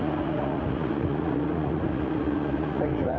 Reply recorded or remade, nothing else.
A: remade